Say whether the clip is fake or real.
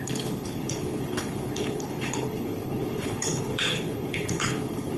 fake